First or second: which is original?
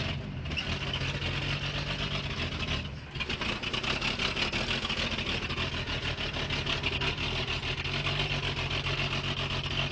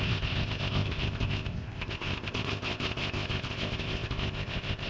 first